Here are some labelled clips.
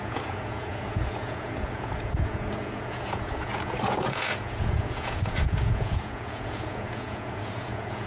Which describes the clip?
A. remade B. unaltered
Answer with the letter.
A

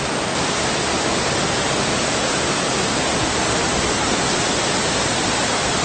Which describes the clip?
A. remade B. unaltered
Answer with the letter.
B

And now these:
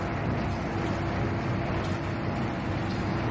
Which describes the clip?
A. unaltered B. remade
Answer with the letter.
A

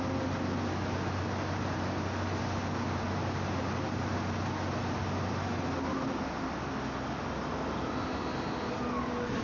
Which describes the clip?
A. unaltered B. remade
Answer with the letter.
A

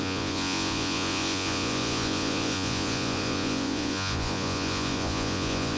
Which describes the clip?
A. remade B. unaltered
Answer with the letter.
A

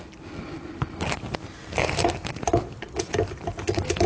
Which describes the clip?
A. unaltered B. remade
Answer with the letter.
A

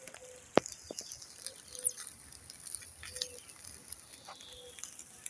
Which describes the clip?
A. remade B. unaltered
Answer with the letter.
B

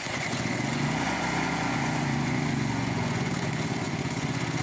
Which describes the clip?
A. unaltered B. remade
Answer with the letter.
B